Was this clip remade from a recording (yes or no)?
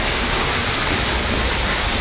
no